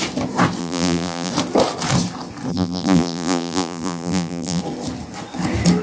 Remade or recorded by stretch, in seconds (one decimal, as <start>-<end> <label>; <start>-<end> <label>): 0.0-0.6 recorded; 0.6-1.3 remade; 1.3-2.5 recorded; 2.5-4.6 remade; 4.6-5.8 recorded